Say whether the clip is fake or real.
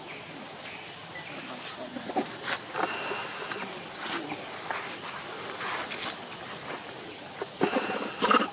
real